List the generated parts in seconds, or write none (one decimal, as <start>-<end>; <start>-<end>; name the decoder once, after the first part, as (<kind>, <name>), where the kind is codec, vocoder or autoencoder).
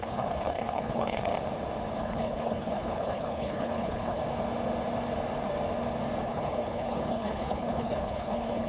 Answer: 0.0-1.3 (codec, HILCodec); 2.0-4.2; 6.2-8.7